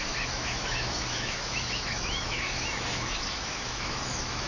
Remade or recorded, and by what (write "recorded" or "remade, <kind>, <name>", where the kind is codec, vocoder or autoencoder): remade, autoencoder, DAC-VAE